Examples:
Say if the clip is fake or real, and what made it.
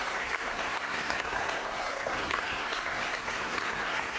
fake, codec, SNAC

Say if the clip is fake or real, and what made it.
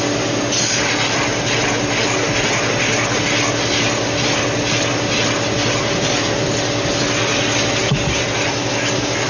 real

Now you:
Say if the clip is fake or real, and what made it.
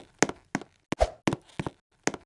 real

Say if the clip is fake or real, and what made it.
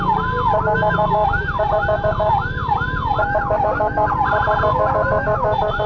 real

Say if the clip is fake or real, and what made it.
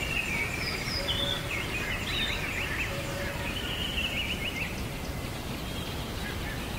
real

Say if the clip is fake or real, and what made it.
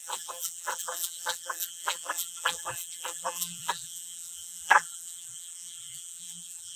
fake, vocoder, BigVGAN v2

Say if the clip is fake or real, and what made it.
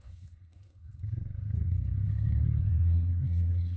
fake, codec, SNAC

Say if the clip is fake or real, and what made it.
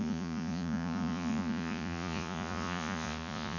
fake, vocoder, Vocos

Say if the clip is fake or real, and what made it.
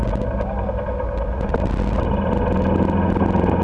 real